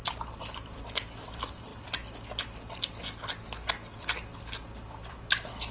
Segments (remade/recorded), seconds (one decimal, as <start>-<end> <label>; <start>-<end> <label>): 0.0-1.7 remade; 1.7-5.1 recorded; 5.1-5.7 remade